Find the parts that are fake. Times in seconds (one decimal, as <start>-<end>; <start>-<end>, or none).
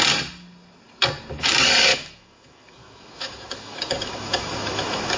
1.9-5.2